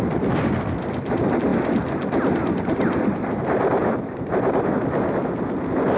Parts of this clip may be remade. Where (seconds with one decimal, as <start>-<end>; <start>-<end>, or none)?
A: 0.0-6.0